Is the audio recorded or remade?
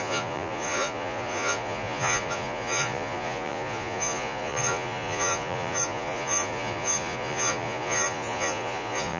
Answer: remade